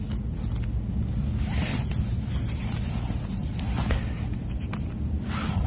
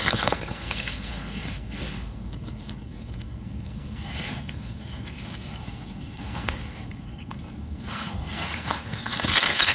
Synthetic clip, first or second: second